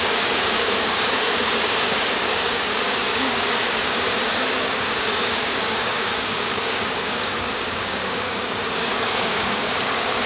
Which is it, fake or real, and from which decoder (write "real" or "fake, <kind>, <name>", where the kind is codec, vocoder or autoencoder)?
fake, codec, DAC